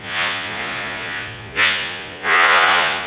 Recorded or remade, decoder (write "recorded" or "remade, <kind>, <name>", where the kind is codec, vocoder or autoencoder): remade, vocoder, Vocos